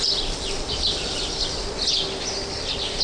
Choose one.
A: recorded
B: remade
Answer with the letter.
A